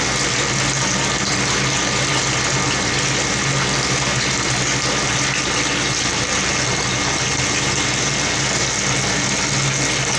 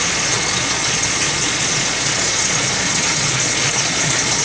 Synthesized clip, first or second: second